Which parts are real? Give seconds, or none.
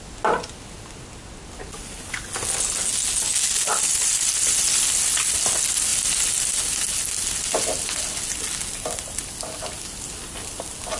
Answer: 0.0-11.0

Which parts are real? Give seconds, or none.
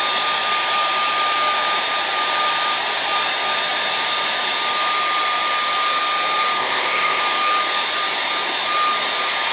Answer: 0.0-6.6; 7.2-9.5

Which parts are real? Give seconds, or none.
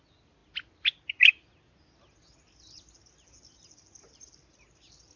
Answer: 0.0-5.2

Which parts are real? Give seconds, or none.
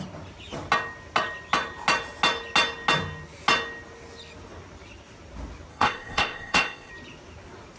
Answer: 0.0-5.7; 6.9-7.8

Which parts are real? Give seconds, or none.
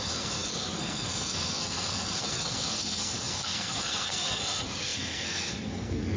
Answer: none